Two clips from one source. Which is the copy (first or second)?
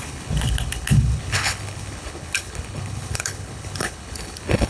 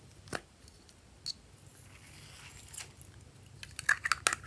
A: first